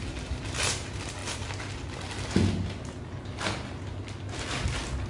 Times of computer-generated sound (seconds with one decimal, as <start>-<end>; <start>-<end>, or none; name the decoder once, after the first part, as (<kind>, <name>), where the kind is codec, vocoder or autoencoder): none